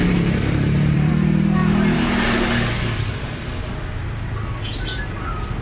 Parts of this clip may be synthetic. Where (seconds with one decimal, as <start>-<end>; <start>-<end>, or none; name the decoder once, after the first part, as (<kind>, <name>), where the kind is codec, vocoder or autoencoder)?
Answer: 0.0-1.1 (vocoder, BigVGAN v2)